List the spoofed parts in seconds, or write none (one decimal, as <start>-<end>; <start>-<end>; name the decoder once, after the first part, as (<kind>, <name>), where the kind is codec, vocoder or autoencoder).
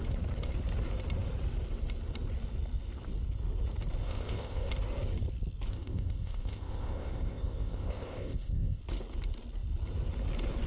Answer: 4.0-4.7 (codec, ZipCodec); 5.7-8.8